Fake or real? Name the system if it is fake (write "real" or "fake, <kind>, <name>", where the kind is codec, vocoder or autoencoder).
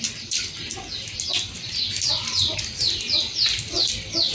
real